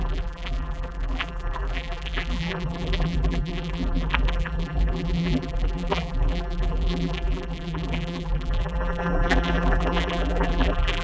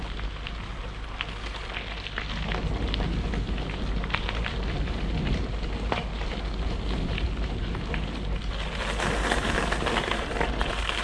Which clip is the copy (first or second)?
first